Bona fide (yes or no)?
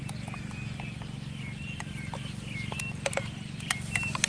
yes